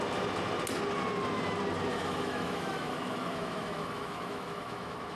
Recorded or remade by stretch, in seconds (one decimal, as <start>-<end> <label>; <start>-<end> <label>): 0.0-1.9 recorded; 1.9-5.2 remade